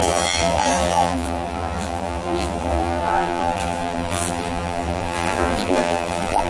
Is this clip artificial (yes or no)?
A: yes